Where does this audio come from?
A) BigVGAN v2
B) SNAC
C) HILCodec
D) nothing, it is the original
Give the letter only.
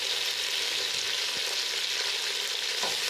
D